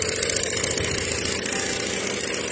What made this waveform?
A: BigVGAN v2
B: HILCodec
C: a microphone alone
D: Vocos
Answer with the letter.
A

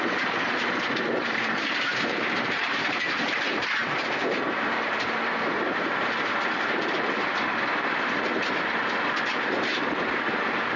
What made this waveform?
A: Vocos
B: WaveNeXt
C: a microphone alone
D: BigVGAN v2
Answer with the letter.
D